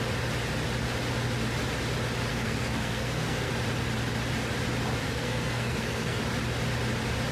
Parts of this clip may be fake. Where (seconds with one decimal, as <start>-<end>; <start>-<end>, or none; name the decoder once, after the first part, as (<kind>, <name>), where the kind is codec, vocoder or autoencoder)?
2.3-3.5 (codec, SNAC); 5.0-6.2